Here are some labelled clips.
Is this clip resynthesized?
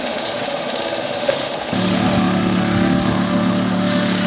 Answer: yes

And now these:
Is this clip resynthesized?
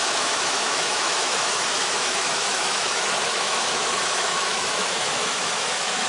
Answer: yes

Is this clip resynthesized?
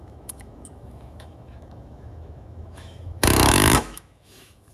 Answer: yes